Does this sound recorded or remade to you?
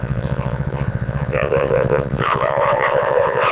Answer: remade